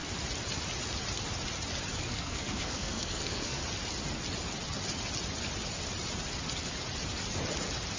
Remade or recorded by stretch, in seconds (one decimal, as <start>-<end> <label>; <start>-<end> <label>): 0.0-2.0 recorded; 2.0-3.6 remade; 3.6-8.0 recorded